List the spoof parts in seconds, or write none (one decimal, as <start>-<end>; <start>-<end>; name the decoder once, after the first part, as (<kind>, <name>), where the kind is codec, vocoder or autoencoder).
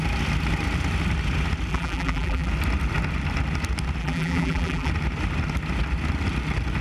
1.7-2.5 (vocoder, BigVGAN v2); 4.0-4.9